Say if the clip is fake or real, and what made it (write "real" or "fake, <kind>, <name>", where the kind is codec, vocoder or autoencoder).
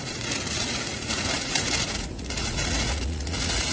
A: fake, vocoder, Vocos